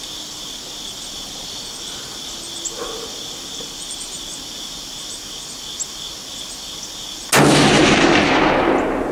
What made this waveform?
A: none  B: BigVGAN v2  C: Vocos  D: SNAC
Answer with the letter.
A